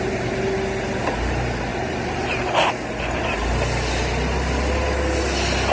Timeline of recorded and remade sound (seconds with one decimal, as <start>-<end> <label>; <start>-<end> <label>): 0.0-1.7 recorded; 1.7-2.7 remade; 2.7-5.7 recorded